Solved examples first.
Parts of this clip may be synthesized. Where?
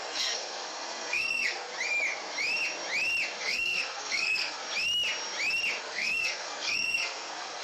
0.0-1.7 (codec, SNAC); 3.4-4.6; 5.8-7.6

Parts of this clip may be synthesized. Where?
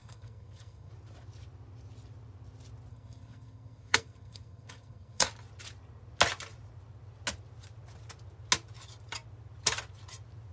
0.0-0.9 (codec, SNAC); 2.9-5.3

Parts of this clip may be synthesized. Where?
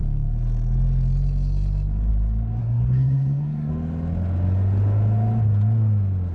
2.6-3.7 (codec, SNAC)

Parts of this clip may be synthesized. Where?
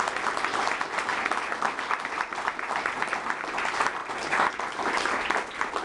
none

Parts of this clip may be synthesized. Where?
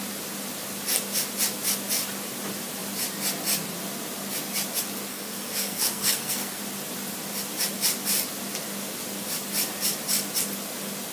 5.1-6.6 (codec, SNAC)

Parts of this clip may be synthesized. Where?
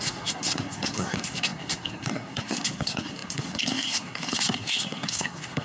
0.0-5.6 (codec, SNAC)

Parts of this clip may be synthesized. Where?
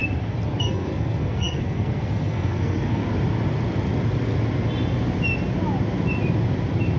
0.6-3.0 (codec, SNAC)